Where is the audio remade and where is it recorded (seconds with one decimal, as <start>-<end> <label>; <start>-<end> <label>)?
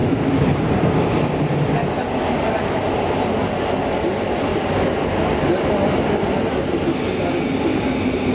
0.0-0.6 remade; 0.6-8.3 recorded